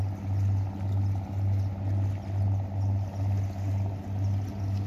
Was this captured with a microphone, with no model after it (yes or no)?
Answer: yes